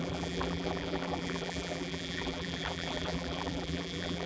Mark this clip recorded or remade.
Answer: remade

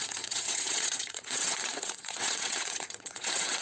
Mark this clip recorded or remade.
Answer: remade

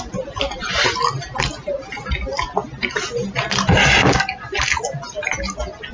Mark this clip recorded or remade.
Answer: recorded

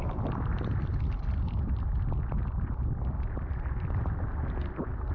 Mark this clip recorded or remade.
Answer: recorded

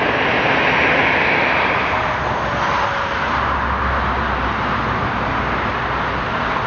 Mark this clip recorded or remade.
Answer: recorded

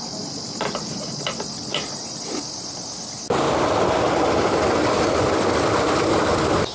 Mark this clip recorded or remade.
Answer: recorded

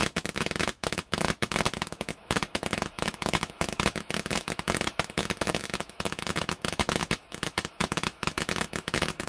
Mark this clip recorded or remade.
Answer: remade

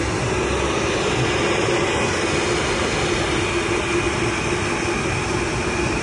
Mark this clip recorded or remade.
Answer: recorded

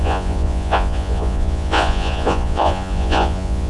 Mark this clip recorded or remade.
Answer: remade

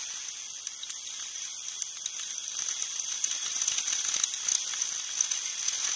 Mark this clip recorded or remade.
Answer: recorded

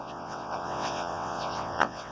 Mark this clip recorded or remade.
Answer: remade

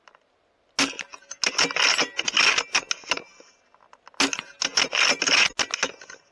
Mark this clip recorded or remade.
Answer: recorded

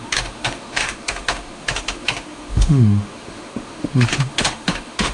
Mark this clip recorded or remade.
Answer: remade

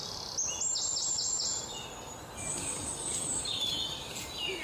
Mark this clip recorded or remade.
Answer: recorded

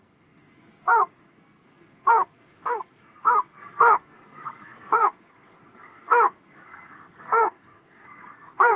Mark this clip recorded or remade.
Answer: remade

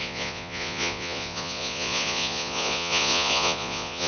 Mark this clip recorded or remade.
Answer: remade